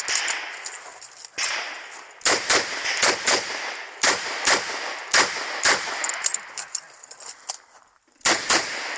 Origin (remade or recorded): recorded